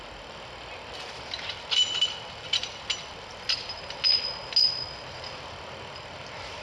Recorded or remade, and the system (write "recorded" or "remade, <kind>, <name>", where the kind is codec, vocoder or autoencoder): recorded